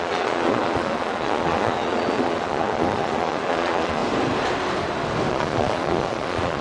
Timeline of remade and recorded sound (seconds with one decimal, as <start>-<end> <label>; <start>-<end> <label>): 0.0-4.0 remade; 4.0-5.3 recorded; 5.3-6.6 remade